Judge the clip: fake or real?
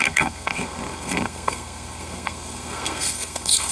fake